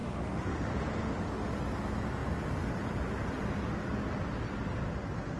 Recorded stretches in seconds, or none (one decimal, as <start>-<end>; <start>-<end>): 0.7-5.4